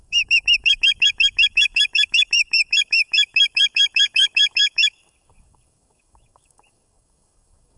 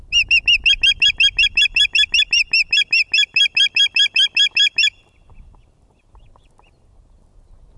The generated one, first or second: first